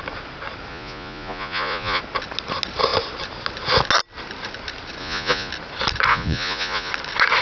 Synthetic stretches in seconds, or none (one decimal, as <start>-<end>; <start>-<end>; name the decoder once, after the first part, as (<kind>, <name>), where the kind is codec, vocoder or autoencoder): 0.7-2.0 (vocoder, Vocos); 5.0-5.5; 6.1-6.9